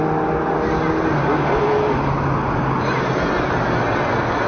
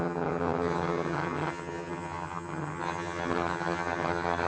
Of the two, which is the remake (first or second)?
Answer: second